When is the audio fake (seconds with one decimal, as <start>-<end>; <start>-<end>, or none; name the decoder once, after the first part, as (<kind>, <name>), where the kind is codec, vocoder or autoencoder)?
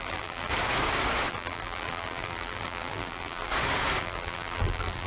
0.0-0.5 (vocoder, BigVGAN v2); 1.3-3.5; 4.0-5.1